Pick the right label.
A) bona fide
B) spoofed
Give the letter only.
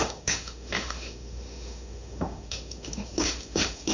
B